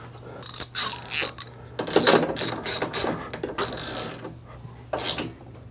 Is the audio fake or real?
real